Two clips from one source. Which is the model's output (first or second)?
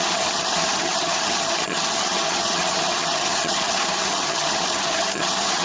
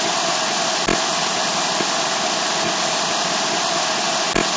first